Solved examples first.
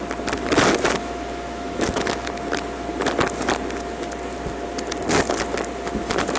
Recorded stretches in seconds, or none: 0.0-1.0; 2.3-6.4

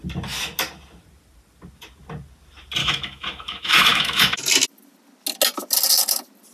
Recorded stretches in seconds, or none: 0.0-2.8; 4.4-6.5

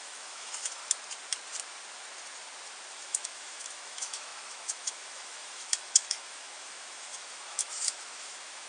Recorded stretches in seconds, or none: 0.8-2.9

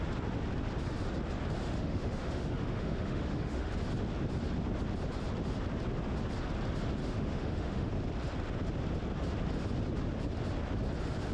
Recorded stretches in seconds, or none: 0.0-1.6; 3.7-7.0; 7.9-11.3

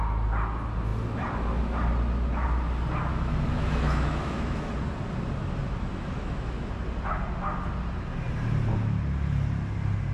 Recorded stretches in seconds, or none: 0.0-3.1; 4.7-5.9; 6.7-10.1

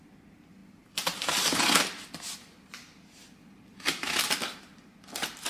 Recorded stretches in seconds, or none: 0.0-5.5